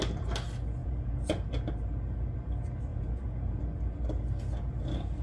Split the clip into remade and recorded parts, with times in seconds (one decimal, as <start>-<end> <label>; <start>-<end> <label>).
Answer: 0.0-0.8 recorded; 0.8-1.5 remade; 1.5-2.9 recorded; 2.9-3.6 remade; 3.6-5.2 recorded